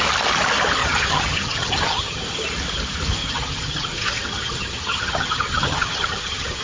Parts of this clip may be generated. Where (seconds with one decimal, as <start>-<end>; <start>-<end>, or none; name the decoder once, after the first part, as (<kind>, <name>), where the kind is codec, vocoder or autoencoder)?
0.8-2.2 (vocoder, HiFi-GAN); 3.2-6.6